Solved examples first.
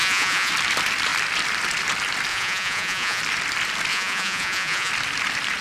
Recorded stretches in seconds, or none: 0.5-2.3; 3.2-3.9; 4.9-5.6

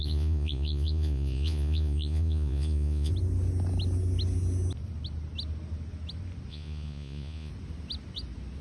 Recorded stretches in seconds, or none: 3.1-6.5; 7.5-8.6